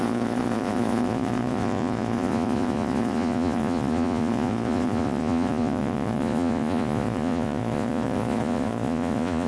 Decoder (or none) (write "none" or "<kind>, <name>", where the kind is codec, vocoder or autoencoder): vocoder, Vocos